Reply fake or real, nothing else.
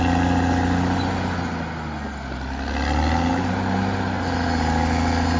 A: real